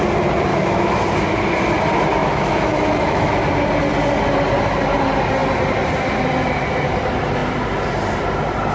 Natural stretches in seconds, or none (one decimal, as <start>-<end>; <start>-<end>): 0.0-0.5; 1.0-2.2; 3.4-8.7